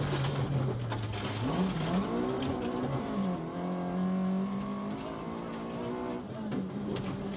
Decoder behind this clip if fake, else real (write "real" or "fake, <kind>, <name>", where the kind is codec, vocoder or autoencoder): real